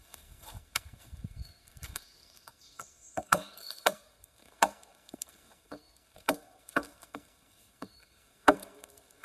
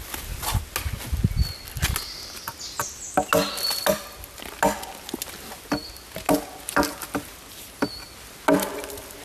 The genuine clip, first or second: second